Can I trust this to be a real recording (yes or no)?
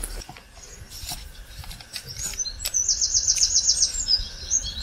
yes